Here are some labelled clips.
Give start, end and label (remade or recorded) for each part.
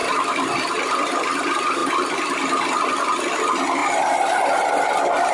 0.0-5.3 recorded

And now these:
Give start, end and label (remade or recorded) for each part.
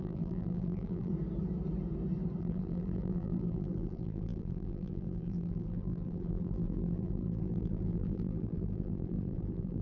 0.0-1.1 remade; 1.1-2.4 recorded; 2.4-9.8 remade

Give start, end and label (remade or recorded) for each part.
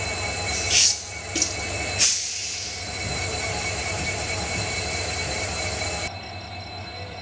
0.0-0.5 recorded; 0.5-1.2 remade; 1.2-3.3 recorded; 3.3-5.9 remade; 5.9-7.2 recorded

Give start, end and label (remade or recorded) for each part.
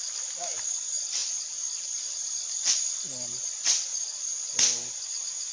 0.0-1.2 recorded; 1.2-3.5 remade; 3.5-5.5 recorded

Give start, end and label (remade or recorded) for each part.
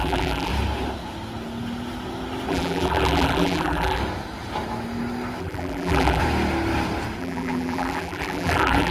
0.0-0.5 remade; 0.5-2.5 recorded; 2.5-4.0 remade; 4.0-5.4 recorded; 5.4-6.2 remade; 6.2-7.2 recorded; 7.2-8.9 remade